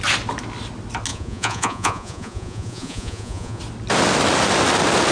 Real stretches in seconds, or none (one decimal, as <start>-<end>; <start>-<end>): 0.0-1.1; 3.6-5.1

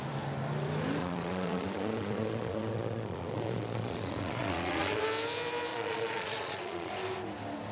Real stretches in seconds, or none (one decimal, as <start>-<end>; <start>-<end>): 0.0-1.0; 5.0-5.7; 6.9-7.7

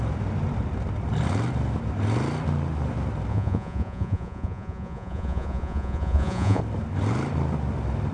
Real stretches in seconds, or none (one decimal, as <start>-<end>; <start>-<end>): 0.0-3.3; 6.6-8.1

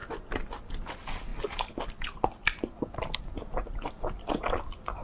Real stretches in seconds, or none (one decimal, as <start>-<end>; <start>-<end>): 0.0-5.0

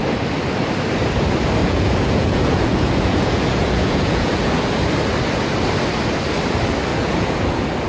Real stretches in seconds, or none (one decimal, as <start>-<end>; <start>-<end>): 0.0-1.6; 4.6-6.9; 7.5-7.9